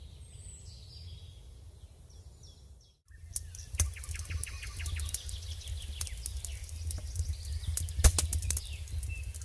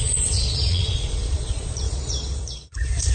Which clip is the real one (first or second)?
first